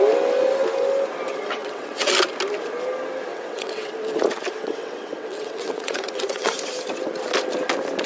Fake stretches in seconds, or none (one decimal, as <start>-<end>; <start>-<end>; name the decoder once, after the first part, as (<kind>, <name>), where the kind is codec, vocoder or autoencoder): 1.3-2.1 (vocoder, WaveNeXt); 3.3-3.9; 4.6-6.5